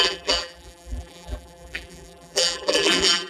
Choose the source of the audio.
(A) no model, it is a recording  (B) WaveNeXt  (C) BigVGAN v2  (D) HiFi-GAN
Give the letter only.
C